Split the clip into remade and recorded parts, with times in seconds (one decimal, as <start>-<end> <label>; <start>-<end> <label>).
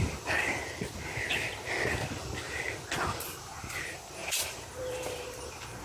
0.0-0.6 remade; 0.6-3.4 recorded; 3.4-5.8 remade